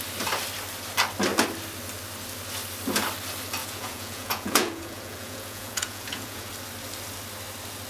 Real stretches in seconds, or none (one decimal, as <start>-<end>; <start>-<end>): 0.0-3.6; 6.5-7.9